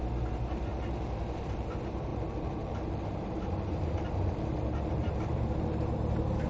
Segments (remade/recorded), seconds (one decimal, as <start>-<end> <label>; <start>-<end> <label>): 0.0-0.7 recorded; 0.7-1.7 remade; 1.7-2.1 recorded; 2.1-6.0 remade; 6.0-6.5 recorded